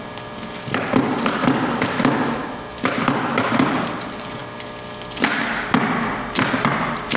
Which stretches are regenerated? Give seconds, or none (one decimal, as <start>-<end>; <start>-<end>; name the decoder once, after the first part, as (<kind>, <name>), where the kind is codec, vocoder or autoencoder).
none